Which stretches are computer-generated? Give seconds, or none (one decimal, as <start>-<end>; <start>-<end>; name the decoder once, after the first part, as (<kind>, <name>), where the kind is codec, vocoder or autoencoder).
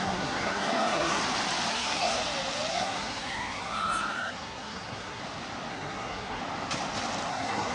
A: 0.0-1.2 (codec, SNAC); 1.7-2.2; 2.7-5.2; 5.7-6.4; 7.3-7.7